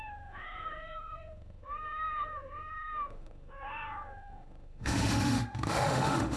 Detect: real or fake fake